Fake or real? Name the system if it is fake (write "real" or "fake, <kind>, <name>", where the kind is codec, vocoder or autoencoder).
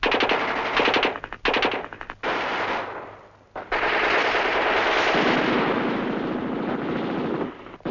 real